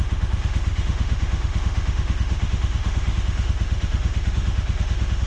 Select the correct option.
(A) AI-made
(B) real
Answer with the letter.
A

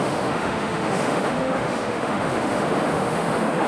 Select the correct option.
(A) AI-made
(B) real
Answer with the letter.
A